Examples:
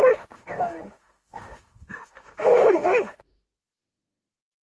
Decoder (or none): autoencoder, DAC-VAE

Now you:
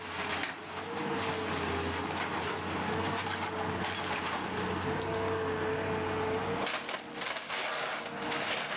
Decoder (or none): none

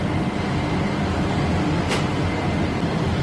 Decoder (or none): none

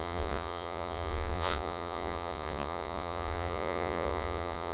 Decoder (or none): vocoder, Vocos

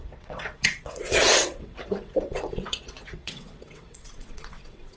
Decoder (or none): vocoder, WaveNeXt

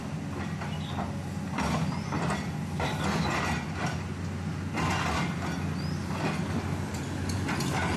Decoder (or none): none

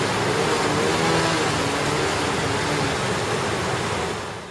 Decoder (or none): none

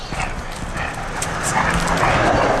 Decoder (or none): none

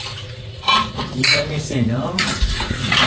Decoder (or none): vocoder, Vocos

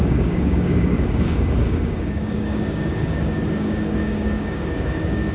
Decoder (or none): codec, DAC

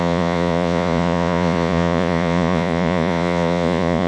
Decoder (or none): vocoder, Vocos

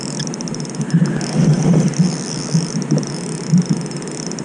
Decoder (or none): none